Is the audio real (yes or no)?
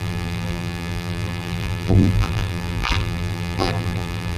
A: no